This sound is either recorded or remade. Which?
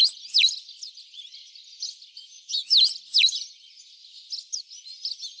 recorded